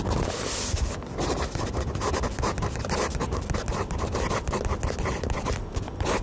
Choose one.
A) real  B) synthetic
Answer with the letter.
A